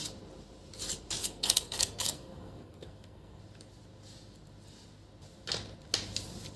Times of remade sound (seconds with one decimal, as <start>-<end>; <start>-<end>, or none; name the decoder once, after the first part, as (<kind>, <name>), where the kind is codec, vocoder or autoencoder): 1.2-3.4 (codec, SNAC)